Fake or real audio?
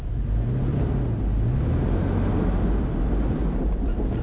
real